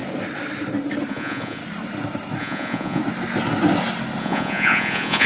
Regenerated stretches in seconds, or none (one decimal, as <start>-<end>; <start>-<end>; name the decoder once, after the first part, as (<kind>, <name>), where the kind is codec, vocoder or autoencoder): 1.1-1.6 (vocoder, Vocos); 2.4-3.0; 4.2-5.3